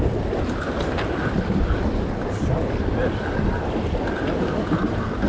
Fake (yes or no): no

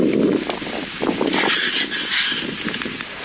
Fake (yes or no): no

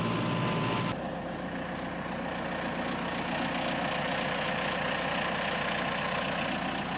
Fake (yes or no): no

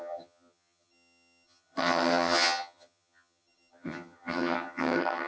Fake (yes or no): yes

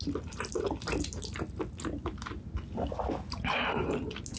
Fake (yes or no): no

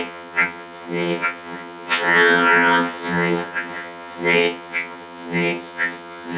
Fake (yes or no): yes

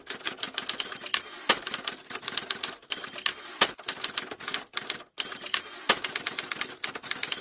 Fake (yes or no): no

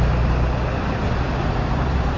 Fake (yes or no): no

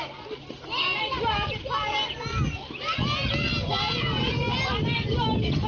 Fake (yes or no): no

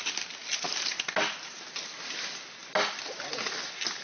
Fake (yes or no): no